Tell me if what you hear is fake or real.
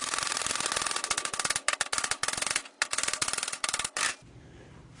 real